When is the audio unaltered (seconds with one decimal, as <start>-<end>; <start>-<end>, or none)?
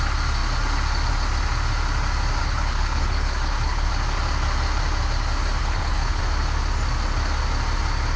0.0-2.4; 3.9-5.6; 6.2-8.2